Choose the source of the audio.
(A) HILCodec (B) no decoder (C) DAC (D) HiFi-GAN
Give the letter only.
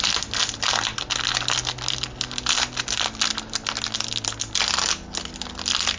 B